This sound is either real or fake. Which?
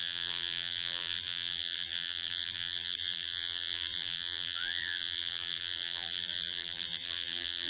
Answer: fake